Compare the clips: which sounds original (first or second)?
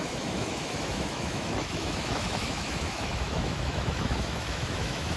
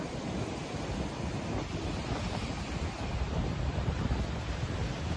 second